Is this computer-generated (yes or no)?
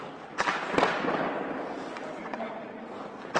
no